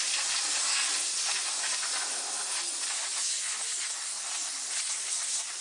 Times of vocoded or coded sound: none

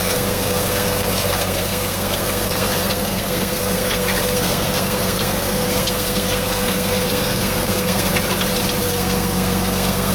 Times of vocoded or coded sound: 0.0-8.1 (codec, SNAC); 8.8-10.1

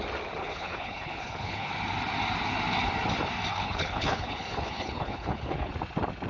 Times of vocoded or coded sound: 0.4-1.7 (codec, HILCodec); 3.5-5.7